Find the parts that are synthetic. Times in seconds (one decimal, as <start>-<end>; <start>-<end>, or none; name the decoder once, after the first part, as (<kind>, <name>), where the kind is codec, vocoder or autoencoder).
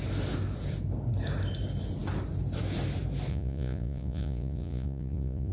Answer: 3.3-5.5 (vocoder, Vocos)